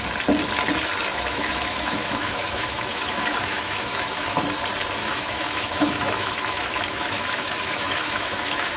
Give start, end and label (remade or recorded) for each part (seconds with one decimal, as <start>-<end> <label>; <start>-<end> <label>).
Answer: 0.0-1.1 recorded; 1.1-4.4 remade; 4.4-5.0 recorded; 5.0-8.8 remade